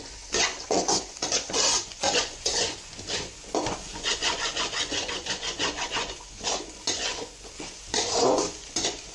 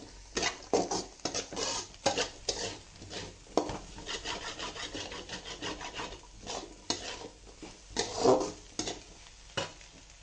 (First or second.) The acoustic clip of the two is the second